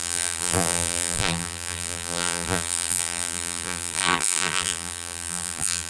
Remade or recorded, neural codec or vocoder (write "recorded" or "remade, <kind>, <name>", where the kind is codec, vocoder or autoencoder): remade, vocoder, BigVGAN v2